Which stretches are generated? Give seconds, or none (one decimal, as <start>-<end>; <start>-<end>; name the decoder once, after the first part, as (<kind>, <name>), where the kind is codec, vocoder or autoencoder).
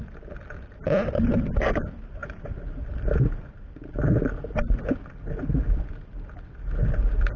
none